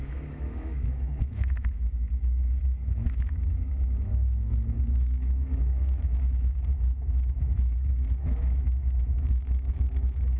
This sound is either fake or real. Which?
fake